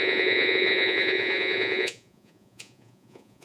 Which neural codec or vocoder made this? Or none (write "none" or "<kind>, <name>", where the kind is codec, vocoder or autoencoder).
vocoder, Vocos